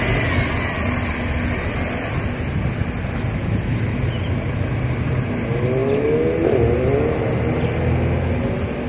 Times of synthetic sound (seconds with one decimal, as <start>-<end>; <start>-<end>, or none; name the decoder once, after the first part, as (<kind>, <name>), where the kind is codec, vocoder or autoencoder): none